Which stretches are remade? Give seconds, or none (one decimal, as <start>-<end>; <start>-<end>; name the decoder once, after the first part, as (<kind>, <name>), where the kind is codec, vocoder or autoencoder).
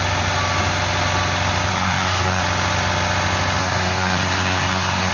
1.7-2.4 (codec, SNAC); 3.6-5.1